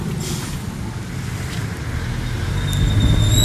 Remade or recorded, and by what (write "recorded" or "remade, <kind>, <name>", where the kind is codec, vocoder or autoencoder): recorded